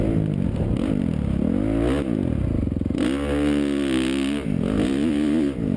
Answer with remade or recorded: recorded